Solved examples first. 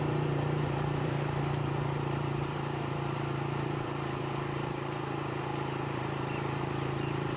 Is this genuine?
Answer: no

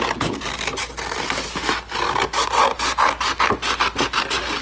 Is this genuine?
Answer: yes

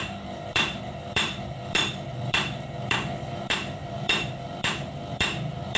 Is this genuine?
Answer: no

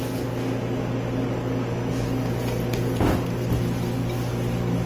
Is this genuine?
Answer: yes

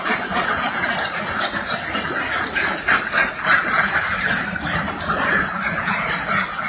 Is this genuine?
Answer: yes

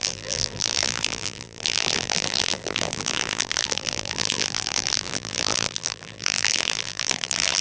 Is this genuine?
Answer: no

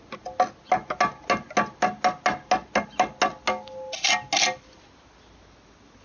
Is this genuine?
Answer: yes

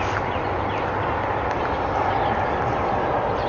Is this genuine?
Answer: yes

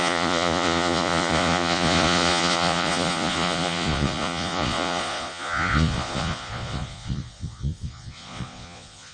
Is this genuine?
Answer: no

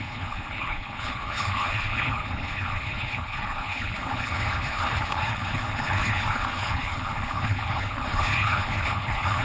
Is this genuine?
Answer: no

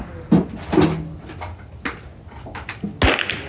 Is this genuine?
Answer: yes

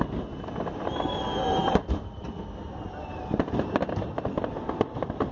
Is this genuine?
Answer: yes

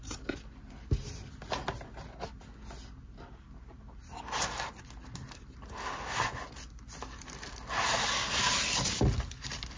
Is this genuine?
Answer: yes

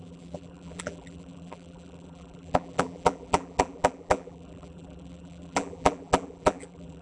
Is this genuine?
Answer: no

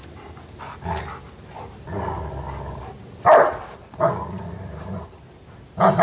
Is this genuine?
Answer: yes